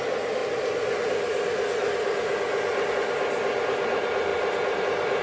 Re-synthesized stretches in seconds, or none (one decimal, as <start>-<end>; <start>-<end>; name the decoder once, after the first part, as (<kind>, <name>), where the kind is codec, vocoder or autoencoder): none